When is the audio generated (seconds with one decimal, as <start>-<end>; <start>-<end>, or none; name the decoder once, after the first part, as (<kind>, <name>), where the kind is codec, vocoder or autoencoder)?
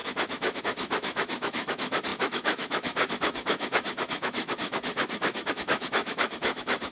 0.0-6.9 (autoencoder, DAC-VAE)